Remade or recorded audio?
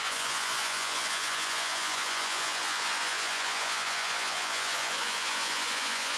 remade